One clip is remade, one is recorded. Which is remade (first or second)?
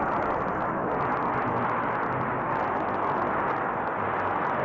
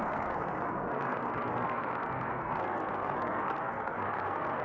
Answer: second